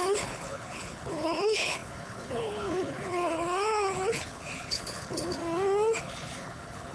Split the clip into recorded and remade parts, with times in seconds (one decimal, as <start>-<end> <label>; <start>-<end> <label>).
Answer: 0.0-5.4 remade; 5.4-6.0 recorded; 6.0-6.9 remade